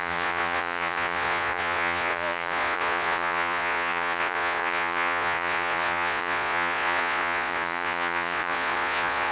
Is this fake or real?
fake